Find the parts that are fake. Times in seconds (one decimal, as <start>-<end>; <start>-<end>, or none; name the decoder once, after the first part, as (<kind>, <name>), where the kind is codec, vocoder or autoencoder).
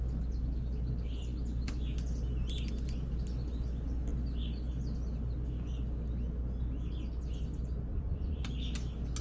7.9-8.4 (vocoder, Vocos)